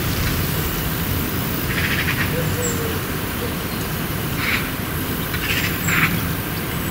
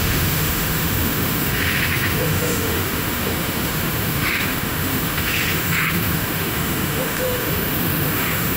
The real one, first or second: first